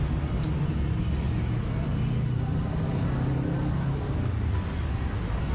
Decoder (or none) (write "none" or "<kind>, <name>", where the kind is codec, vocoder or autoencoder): none